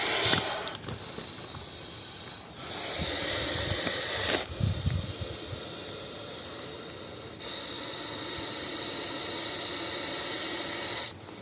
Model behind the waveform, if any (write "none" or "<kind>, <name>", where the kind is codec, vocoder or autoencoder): none